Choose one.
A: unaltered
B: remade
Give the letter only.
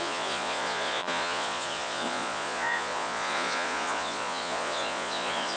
B